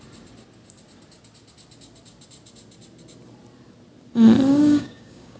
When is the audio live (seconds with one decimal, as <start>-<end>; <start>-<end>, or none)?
0.0-4.5